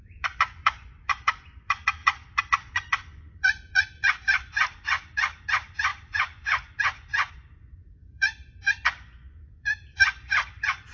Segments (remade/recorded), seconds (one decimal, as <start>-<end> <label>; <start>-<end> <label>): 0.0-10.9 remade